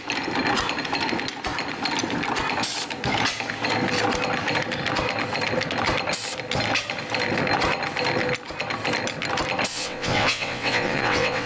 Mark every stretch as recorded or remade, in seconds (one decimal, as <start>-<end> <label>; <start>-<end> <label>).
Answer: 0.0-9.7 recorded; 9.7-11.5 remade